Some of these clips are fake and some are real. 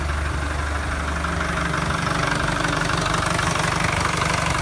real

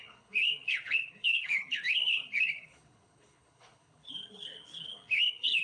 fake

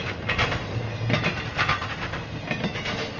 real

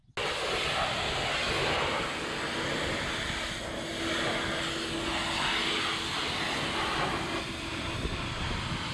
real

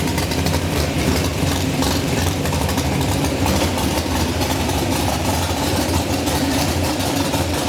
fake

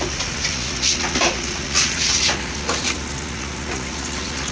fake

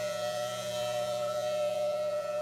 fake